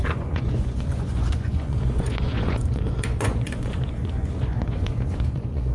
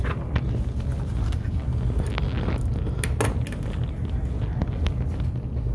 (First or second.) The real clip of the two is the second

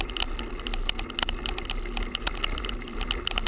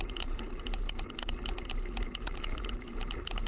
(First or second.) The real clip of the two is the first